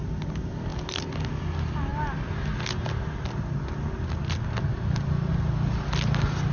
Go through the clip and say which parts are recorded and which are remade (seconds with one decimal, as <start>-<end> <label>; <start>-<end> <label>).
0.0-6.5 recorded